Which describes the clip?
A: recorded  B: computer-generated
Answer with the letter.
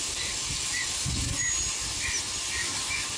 A